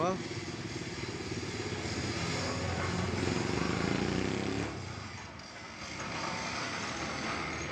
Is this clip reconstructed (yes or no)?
no